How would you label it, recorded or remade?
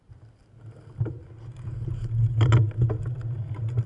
recorded